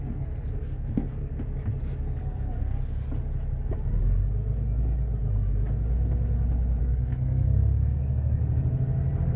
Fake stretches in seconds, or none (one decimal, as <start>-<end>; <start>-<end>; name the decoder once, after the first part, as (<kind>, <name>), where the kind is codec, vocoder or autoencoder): 0.0-1.3 (codec, SNAC); 2.2-2.6; 6.8-8.4